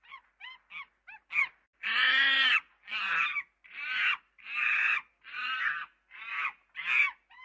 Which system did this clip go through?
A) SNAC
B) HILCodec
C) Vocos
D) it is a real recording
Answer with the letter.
D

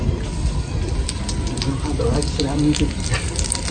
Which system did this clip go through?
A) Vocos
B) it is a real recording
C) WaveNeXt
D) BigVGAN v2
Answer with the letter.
B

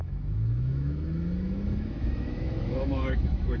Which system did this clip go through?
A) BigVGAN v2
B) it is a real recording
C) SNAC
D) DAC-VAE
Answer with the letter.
D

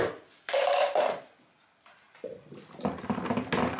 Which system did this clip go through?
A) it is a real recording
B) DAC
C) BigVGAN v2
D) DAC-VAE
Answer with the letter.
A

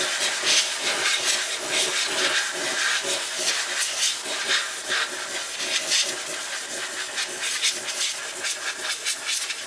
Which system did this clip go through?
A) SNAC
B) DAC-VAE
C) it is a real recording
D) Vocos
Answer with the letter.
C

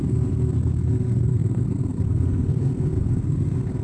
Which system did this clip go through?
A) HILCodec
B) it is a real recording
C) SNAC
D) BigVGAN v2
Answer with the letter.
C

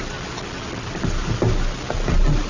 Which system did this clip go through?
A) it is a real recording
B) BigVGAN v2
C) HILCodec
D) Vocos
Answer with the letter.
A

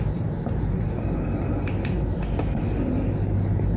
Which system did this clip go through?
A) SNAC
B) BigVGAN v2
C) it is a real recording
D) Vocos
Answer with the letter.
C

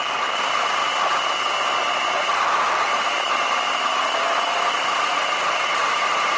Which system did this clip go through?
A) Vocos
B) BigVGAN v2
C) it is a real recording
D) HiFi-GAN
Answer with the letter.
C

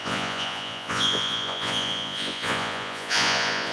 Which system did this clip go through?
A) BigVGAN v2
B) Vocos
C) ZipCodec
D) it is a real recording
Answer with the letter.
B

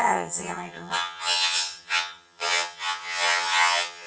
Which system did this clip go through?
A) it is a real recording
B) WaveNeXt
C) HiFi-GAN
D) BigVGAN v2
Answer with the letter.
C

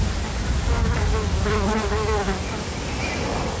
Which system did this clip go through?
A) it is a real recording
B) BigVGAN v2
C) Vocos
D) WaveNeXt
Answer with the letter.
A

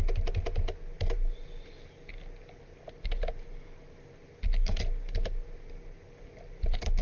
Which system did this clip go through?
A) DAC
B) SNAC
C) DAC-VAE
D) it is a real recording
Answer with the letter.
D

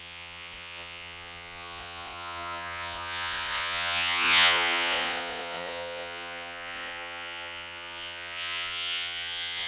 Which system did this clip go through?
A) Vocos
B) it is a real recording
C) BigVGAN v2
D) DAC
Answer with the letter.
A